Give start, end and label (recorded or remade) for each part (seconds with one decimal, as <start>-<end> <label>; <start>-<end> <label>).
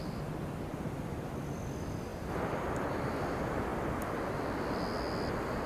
0.0-2.1 recorded; 2.1-3.2 remade; 3.2-5.7 recorded